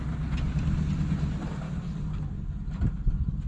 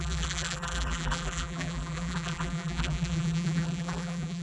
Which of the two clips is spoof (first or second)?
second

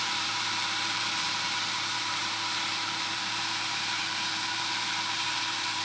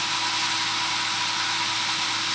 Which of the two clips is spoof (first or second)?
first